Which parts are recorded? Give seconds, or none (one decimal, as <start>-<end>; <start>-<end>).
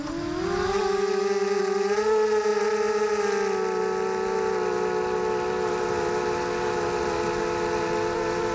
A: 0.0-8.5